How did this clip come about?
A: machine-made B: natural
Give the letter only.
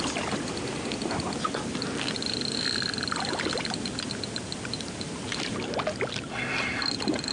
B